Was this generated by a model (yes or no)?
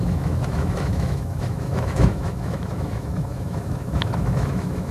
yes